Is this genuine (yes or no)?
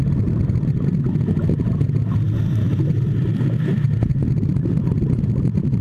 yes